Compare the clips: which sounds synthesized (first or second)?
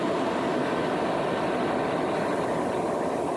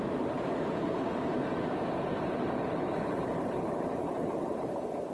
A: second